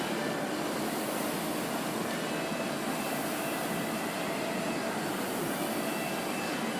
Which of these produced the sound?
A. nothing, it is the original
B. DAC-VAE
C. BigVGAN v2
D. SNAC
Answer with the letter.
A